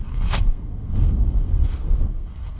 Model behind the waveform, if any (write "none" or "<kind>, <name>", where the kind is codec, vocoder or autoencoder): codec, SNAC